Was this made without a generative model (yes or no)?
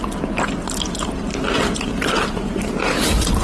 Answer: yes